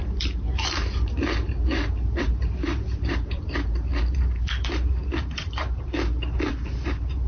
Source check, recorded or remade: remade